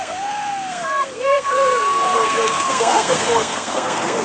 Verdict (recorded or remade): remade